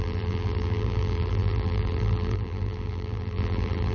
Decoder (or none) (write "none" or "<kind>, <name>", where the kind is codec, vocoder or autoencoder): vocoder, BigVGAN v2